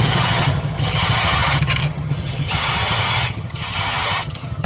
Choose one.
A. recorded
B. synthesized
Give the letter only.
B